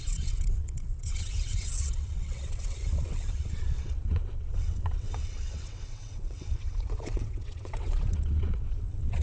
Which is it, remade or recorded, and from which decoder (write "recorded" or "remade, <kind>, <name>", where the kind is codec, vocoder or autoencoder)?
remade, vocoder, WaveNeXt